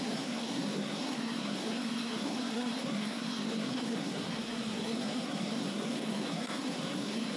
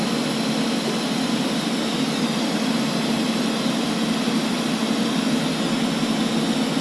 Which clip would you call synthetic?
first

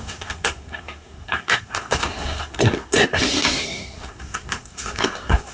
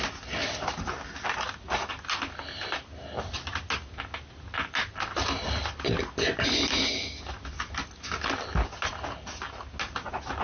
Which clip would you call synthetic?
first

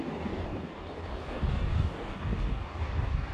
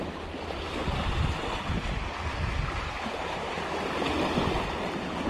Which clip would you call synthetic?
first